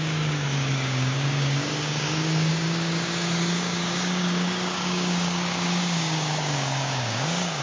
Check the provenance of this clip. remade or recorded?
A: remade